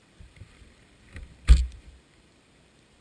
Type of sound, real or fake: fake